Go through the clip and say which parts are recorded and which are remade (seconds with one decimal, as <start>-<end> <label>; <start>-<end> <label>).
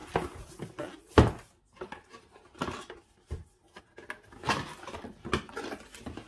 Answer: 0.0-6.3 recorded